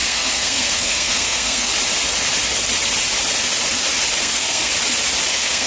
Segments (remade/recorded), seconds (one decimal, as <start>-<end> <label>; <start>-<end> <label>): 0.0-1.7 remade; 1.7-4.2 recorded; 4.2-4.7 remade; 4.7-5.3 recorded; 5.3-5.7 remade